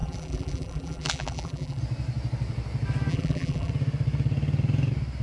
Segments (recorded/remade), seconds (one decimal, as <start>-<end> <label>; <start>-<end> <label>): 0.0-1.8 remade; 1.8-3.1 recorded; 3.1-3.7 remade; 3.7-5.2 recorded